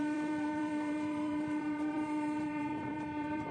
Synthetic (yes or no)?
yes